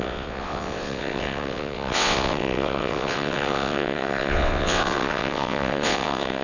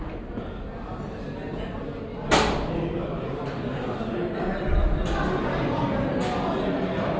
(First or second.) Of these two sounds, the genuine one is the second